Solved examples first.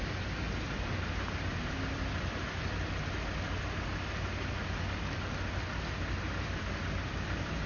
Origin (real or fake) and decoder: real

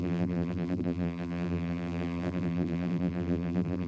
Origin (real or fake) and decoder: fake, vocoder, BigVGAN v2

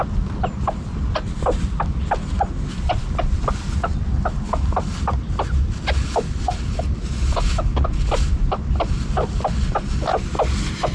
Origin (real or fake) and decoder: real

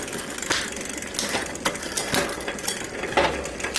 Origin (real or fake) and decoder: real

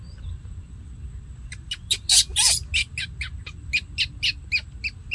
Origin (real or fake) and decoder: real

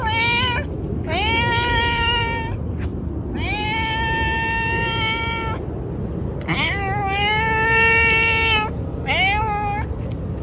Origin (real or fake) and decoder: real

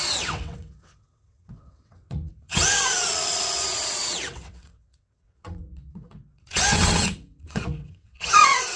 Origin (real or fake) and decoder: fake, vocoder, WaveNeXt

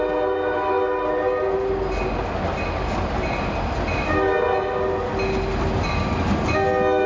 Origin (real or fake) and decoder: real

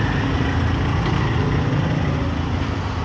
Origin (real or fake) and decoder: real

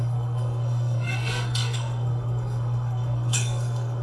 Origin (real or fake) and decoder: fake, codec, SNAC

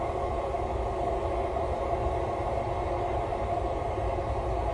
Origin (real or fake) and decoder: real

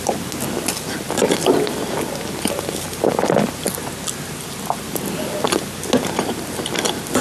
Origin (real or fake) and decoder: real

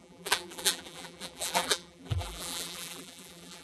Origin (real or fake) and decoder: fake, vocoder, BigVGAN v2